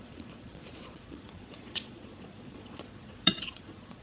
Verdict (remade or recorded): remade